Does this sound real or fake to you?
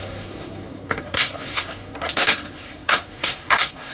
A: fake